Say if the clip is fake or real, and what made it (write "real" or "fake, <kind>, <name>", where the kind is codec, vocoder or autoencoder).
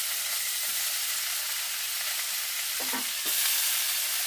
real